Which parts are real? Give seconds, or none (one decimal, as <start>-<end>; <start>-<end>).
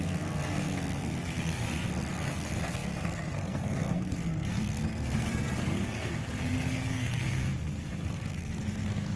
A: none